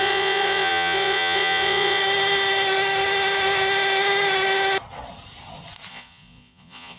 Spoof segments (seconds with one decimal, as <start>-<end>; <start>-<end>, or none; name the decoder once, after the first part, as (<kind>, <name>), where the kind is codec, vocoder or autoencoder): 0.0-2.0 (vocoder, Vocos); 5.9-7.0